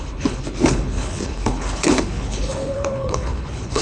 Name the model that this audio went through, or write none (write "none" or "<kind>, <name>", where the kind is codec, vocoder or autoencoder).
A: codec, HILCodec